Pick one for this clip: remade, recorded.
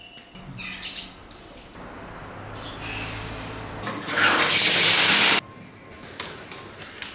recorded